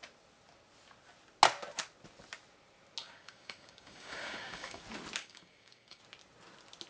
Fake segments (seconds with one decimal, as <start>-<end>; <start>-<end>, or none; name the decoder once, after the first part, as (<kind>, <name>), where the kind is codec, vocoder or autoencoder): 3.0-4.8 (codec, DAC); 5.2-6.0